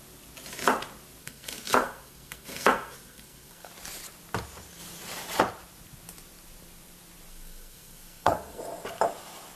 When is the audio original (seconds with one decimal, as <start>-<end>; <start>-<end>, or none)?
0.0-1.2; 3.7-7.3; 8.6-9.6